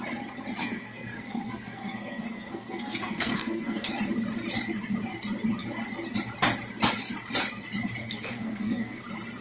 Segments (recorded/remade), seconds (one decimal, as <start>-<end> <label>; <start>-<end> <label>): 0.0-0.6 recorded; 0.6-3.9 remade; 3.9-8.0 recorded; 8.0-9.0 remade; 9.0-9.4 recorded